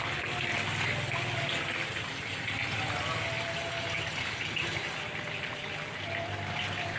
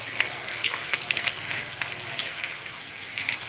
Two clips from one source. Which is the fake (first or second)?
second